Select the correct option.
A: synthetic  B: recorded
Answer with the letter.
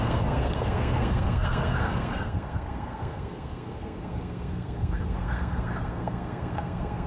A